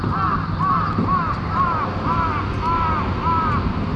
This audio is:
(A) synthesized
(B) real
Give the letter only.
B